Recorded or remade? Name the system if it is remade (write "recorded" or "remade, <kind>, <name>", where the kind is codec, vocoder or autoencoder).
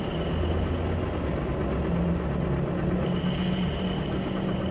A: recorded